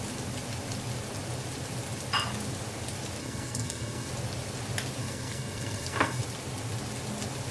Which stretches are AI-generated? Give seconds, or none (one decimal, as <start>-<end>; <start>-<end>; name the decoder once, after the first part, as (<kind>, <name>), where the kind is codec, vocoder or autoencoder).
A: 3.2-4.1 (codec, SNAC); 5.0-6.2